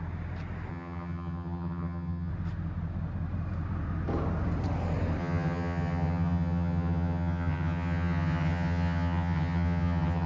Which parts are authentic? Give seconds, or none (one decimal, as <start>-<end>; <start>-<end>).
0.0-0.7; 2.3-5.2